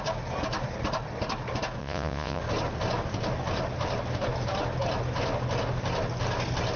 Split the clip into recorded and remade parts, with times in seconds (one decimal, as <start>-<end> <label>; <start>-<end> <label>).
0.0-1.8 recorded; 1.8-2.4 remade; 2.4-6.8 recorded